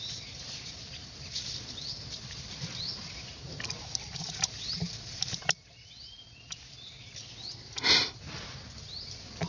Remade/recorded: recorded